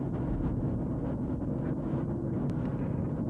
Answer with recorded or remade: recorded